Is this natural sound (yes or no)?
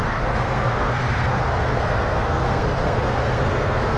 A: no